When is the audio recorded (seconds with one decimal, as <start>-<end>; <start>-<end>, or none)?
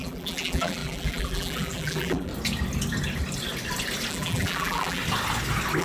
2.3-4.1; 5.0-5.8